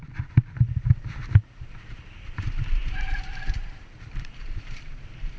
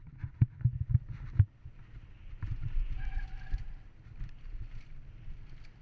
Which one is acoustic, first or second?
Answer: second